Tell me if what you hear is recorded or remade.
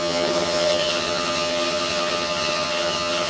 remade